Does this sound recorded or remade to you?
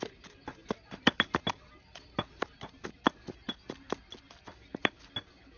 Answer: recorded